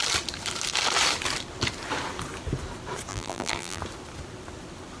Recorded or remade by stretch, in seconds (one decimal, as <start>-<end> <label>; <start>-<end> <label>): 0.0-3.1 recorded; 3.1-3.8 remade; 3.8-5.0 recorded